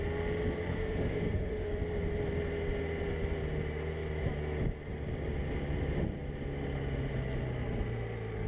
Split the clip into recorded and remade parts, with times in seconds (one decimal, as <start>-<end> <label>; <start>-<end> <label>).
0.0-0.7 recorded; 0.7-1.8 remade; 1.8-8.5 recorded